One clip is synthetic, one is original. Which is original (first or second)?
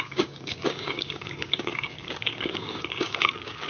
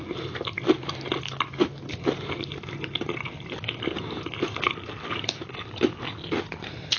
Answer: second